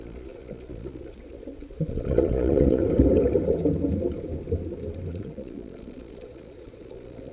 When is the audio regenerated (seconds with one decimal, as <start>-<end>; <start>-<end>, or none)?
0.0-2.8; 5.1-7.3